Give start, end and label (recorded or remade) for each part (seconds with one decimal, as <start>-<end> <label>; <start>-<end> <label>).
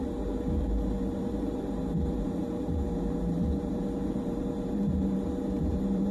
0.0-6.1 remade